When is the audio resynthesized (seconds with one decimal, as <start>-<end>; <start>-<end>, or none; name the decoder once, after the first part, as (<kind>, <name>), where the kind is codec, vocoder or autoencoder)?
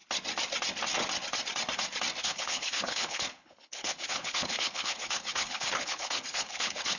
2.2-7.0 (codec, HILCodec)